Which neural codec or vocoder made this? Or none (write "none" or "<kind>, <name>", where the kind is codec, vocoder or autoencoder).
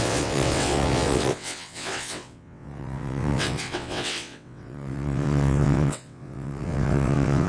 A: vocoder, WaveNeXt